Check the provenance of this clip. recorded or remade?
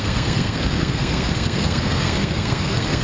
remade